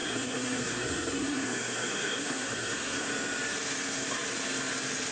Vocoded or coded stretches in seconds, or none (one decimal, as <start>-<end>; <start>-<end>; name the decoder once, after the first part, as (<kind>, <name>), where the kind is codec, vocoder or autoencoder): 0.0-3.1 (codec, SNAC)